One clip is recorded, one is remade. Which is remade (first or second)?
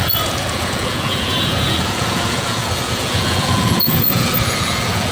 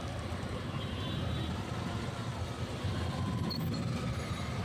first